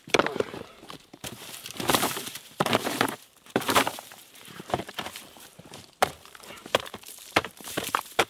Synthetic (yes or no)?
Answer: yes